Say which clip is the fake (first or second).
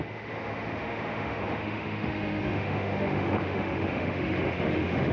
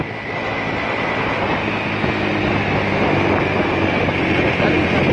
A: first